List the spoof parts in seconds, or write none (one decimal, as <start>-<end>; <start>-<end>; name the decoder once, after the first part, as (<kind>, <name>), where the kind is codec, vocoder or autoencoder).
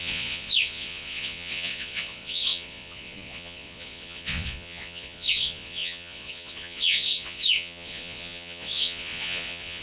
0.0-9.8 (vocoder, Vocos)